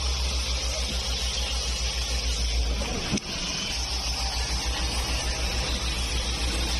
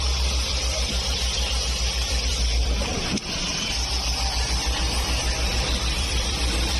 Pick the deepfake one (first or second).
second